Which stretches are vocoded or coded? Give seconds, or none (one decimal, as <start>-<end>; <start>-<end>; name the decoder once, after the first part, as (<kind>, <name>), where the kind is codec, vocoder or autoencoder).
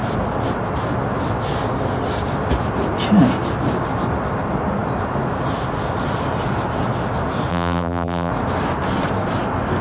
7.5-8.3 (vocoder, BigVGAN v2)